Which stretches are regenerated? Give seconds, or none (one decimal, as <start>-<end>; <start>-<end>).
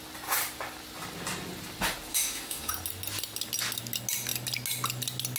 2.1-2.7